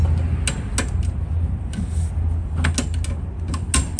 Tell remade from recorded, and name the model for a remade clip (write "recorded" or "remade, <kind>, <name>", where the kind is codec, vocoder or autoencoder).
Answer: recorded